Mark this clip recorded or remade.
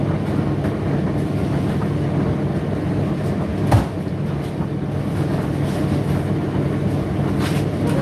recorded